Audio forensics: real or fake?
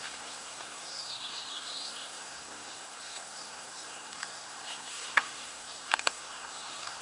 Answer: fake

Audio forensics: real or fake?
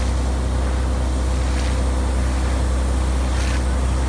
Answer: real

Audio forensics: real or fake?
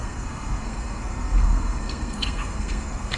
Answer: fake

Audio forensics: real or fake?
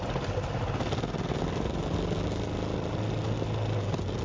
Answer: real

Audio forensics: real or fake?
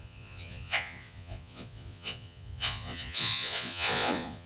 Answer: fake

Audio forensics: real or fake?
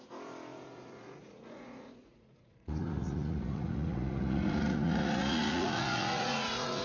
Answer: fake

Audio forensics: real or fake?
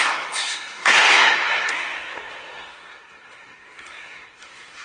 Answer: fake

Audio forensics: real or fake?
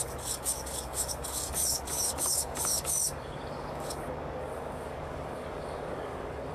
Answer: fake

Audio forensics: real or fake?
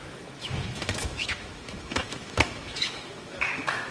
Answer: fake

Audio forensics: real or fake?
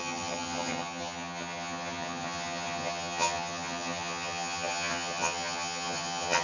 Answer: fake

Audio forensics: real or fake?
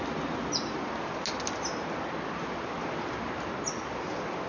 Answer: real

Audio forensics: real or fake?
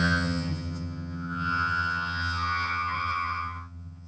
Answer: fake